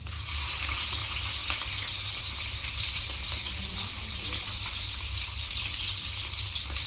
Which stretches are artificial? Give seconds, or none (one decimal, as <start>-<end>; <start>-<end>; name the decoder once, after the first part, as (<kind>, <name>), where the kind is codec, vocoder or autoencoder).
0.0-1.0 (vocoder, BigVGAN v2); 2.2-6.9